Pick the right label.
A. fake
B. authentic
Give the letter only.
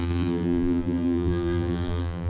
A